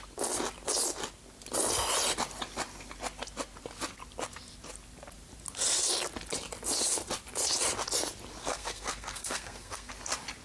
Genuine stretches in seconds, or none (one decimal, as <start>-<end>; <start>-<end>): 0.0-8.4; 9.9-10.4